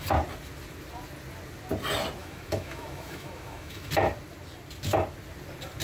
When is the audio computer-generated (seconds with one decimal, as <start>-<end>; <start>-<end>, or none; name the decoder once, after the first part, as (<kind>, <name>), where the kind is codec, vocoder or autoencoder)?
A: 2.2-3.9 (autoencoder, DAC-VAE)